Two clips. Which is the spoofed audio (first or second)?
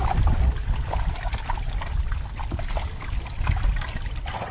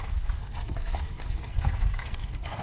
second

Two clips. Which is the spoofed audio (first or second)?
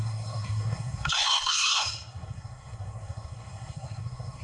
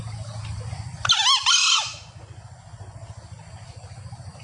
first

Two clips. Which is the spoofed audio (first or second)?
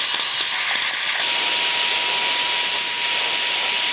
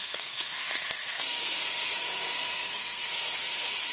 second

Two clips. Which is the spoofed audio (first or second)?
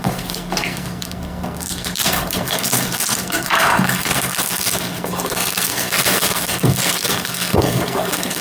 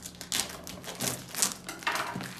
first